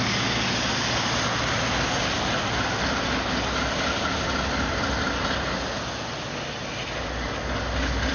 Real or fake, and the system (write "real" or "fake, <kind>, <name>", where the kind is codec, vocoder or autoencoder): real